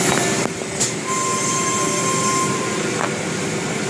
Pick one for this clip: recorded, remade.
recorded